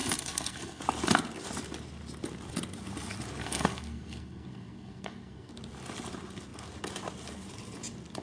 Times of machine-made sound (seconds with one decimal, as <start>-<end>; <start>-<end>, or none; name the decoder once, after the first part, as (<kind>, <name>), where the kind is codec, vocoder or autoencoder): 0.0-0.8 (codec, SNAC); 3.4-5.5